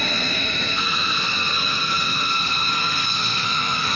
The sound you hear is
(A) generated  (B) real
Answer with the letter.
A